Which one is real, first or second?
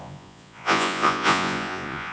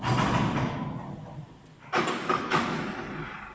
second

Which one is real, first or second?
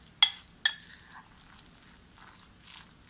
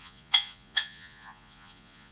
first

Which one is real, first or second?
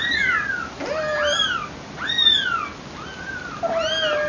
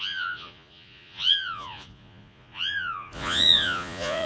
first